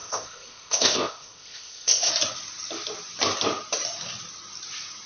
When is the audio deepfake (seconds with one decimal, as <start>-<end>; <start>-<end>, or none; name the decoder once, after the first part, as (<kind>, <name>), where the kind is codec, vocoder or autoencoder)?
0.0-2.1 (codec, ZipCodec)